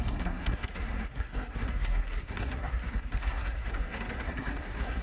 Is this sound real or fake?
fake